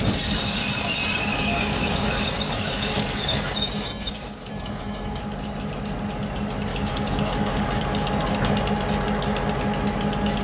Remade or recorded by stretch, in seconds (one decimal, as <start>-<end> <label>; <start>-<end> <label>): 0.0-1.2 recorded; 1.2-4.1 remade; 4.1-4.5 recorded; 4.5-5.2 remade; 5.2-6.7 recorded; 6.7-7.8 remade; 7.8-10.4 recorded